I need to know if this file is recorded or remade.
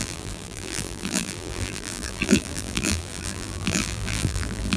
remade